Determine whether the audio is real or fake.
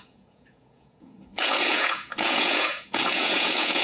fake